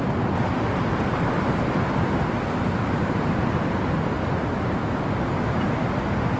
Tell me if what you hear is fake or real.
real